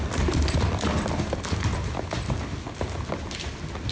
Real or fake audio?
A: real